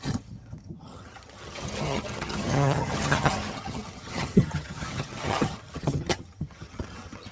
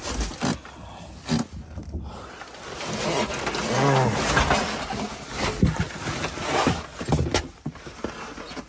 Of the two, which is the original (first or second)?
second